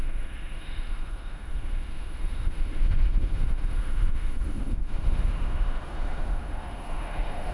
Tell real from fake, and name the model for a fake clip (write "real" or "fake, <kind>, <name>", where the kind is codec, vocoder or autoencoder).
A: fake, autoencoder, DAC-VAE